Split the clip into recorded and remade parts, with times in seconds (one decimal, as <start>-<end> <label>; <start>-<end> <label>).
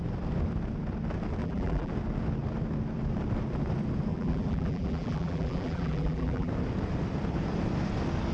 0.0-1.4 recorded; 1.4-1.9 remade; 1.9-4.1 recorded; 4.1-6.5 remade; 6.5-8.3 recorded